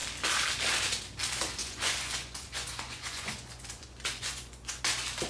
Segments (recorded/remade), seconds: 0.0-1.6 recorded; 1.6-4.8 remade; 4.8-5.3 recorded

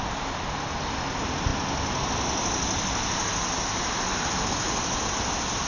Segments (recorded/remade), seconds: 0.0-5.7 recorded

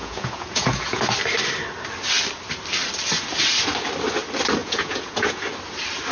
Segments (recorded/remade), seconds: 0.0-1.0 remade; 1.0-4.6 recorded; 4.6-5.4 remade; 5.4-6.1 recorded

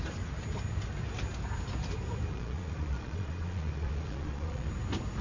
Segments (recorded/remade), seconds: 0.0-2.3 recorded; 2.3-4.7 remade; 4.7-5.2 recorded

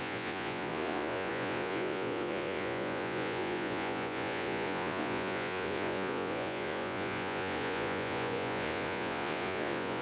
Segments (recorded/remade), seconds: 0.0-10.0 remade